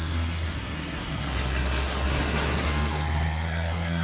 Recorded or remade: remade